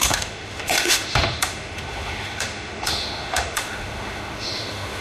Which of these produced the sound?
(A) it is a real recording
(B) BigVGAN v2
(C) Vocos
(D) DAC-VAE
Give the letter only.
D